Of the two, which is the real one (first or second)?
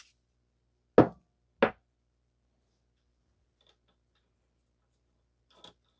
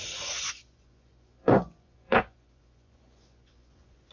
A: first